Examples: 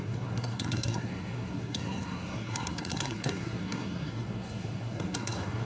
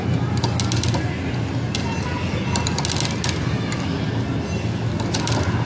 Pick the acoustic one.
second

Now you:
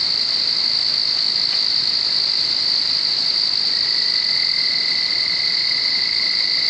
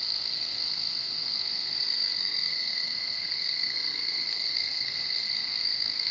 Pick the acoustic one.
first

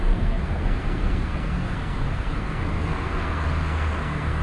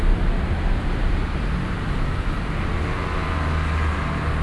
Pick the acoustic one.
second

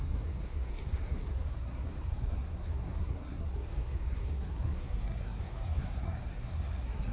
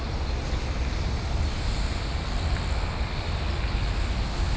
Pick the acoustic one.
second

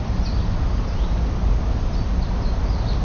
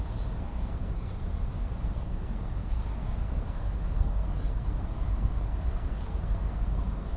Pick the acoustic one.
first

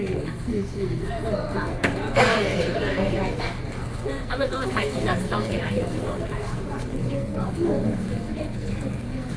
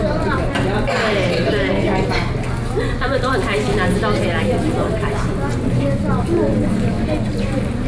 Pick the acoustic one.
second